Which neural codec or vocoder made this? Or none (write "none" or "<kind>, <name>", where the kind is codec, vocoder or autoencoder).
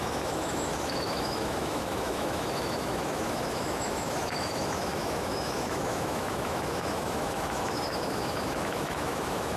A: autoencoder, DAC-VAE